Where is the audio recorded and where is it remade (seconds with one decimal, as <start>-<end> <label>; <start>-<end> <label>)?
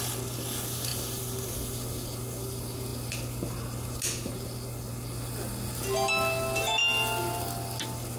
0.0-8.2 recorded